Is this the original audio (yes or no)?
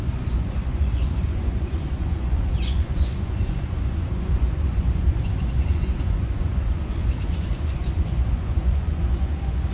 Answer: no